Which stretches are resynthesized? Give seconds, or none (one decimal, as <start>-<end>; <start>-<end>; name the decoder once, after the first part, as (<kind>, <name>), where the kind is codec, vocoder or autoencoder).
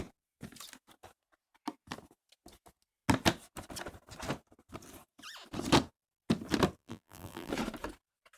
6.8-7.5 (vocoder, BigVGAN v2)